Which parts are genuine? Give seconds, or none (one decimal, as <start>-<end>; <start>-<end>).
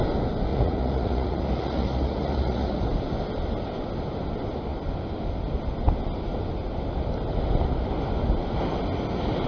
0.0-0.5; 2.8-9.5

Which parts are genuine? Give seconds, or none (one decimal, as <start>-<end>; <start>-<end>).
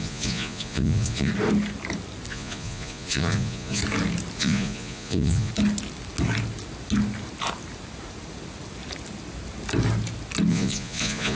1.3-2.3; 3.8-4.4; 5.5-10.5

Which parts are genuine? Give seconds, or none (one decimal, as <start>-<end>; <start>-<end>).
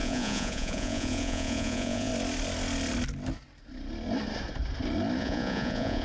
2.1-5.2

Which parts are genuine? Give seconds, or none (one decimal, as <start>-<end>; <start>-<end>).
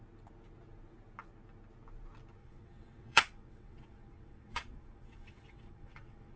0.0-2.4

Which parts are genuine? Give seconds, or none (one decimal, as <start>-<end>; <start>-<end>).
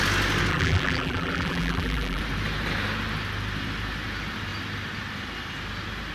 0.0-0.5; 2.2-6.1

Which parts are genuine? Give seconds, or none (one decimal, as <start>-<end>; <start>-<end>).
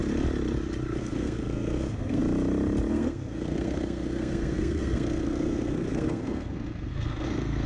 0.0-1.0; 2.2-2.9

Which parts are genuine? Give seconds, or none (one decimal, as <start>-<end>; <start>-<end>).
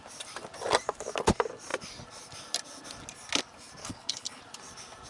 0.0-3.8; 4.4-5.1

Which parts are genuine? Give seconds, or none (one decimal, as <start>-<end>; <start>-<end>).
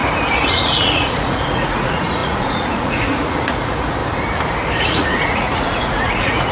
0.0-0.5; 4.0-4.8